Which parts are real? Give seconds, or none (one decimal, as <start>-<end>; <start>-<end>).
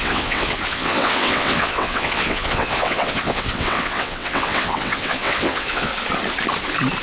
5.9-7.0